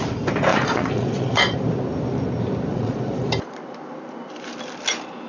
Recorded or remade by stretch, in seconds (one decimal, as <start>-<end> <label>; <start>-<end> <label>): 0.0-0.5 recorded; 0.5-1.6 remade; 1.6-2.7 recorded; 2.7-3.3 remade; 3.3-5.3 recorded